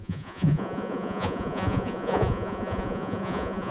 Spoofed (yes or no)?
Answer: yes